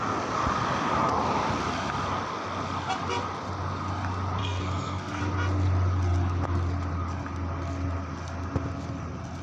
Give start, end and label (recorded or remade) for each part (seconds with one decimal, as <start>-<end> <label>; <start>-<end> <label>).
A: 0.0-4.4 recorded; 4.4-5.2 remade; 5.2-9.4 recorded